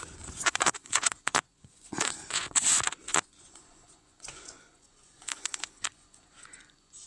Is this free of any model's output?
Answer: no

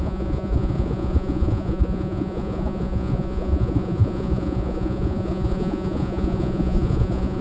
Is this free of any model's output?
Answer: no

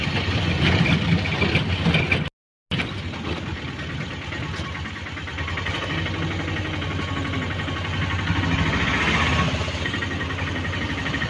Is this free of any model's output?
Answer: yes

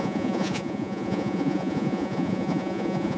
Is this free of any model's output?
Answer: no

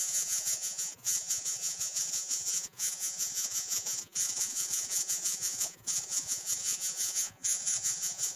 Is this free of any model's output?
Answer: no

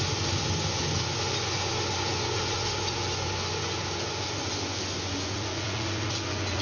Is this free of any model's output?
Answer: no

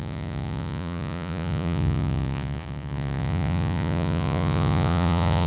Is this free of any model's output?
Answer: no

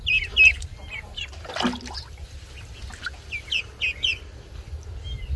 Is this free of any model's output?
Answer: yes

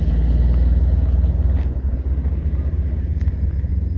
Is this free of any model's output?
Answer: yes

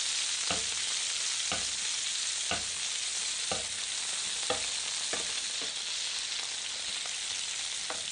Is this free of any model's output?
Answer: yes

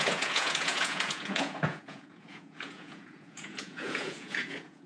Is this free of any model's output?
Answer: no